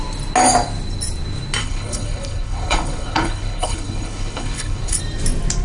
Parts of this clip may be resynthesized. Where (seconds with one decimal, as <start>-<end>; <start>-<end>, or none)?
1.6-5.0